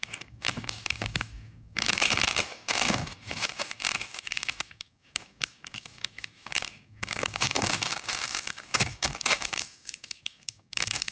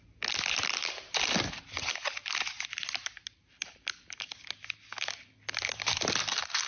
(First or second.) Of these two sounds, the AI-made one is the first